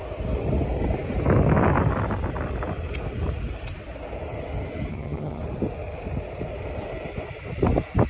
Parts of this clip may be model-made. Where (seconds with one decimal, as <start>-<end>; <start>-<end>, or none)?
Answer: 4.9-5.4